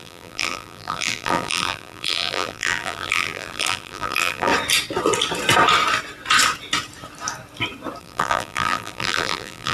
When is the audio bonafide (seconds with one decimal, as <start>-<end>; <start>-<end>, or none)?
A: 4.5-8.0